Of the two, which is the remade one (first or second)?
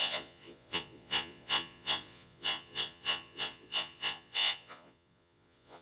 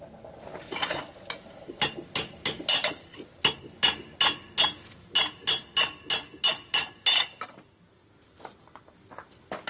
first